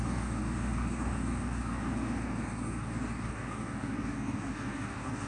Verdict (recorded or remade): remade